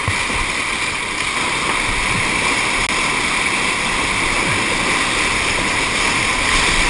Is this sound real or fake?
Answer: real